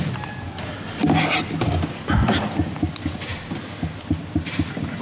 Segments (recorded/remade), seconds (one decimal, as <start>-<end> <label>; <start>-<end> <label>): 0.0-5.0 recorded

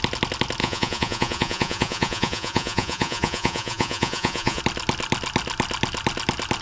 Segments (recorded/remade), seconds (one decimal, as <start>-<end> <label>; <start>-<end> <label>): 0.0-0.6 recorded; 0.6-4.6 remade; 4.6-6.6 recorded